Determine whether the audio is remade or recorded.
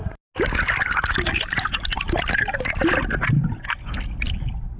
recorded